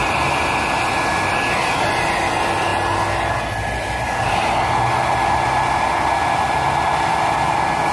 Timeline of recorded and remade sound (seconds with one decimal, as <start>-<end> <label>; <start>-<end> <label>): 0.0-7.9 recorded